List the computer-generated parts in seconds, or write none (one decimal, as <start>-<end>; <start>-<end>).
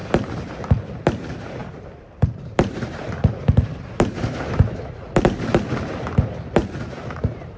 1.6-5.7; 6.6-7.6